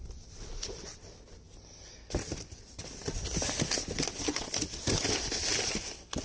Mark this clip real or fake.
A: real